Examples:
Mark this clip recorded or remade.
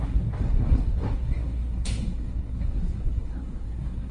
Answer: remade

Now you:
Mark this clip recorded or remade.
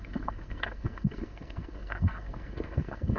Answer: remade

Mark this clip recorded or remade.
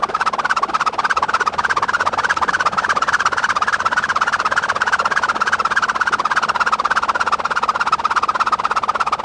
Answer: recorded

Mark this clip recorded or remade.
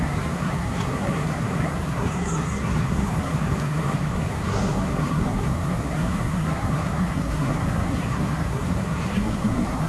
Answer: remade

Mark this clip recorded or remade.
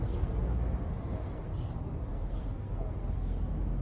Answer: remade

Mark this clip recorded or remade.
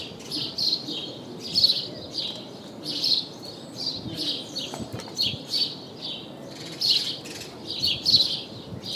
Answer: recorded